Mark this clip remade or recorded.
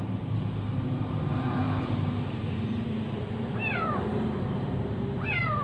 remade